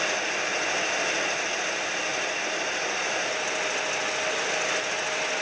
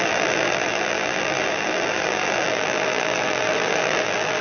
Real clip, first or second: first